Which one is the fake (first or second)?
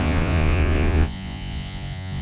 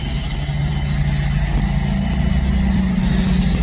first